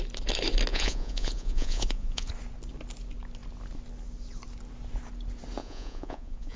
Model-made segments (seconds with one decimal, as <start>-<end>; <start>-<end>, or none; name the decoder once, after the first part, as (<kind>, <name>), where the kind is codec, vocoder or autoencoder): 0.7-2.3 (vocoder, Vocos); 5.6-6.6